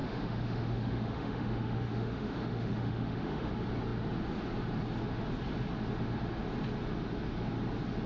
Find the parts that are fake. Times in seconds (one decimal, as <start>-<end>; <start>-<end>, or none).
0.0-3.5